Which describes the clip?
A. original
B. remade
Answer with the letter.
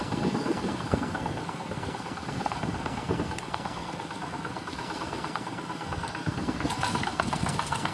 B